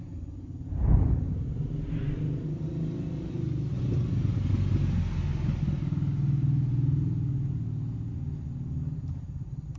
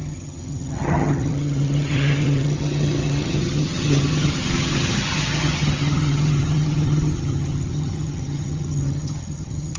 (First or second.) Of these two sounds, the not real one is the second